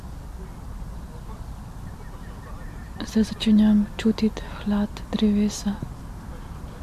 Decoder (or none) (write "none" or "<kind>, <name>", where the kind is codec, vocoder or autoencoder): none